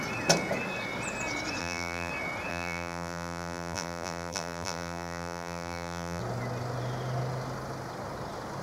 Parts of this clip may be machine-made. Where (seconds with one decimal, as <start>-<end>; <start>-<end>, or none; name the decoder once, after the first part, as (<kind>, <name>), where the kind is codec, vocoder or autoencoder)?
1.6-2.1 (vocoder, BigVGAN v2); 2.5-6.2